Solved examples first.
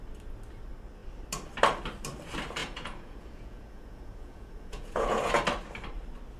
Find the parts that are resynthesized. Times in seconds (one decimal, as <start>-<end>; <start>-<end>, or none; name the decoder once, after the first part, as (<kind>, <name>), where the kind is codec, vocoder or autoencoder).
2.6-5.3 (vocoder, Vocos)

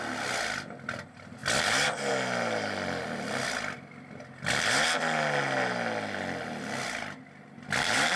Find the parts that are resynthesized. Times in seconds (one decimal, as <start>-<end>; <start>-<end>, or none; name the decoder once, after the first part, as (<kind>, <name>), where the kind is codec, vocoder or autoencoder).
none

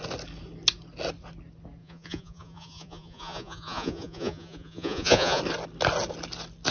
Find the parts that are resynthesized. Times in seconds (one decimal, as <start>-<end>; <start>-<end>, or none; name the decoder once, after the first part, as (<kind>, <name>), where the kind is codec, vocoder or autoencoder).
1.8-5.4 (vocoder, Vocos)

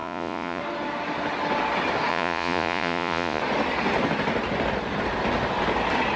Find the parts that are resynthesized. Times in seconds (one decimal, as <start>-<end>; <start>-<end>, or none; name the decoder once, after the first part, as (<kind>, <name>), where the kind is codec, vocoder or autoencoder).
0.0-0.6 (vocoder, Vocos); 2.1-3.4